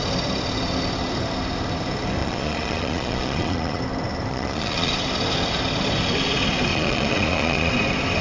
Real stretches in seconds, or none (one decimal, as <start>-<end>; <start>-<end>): 0.0-2.2; 3.8-4.3; 4.9-6.7; 7.7-8.2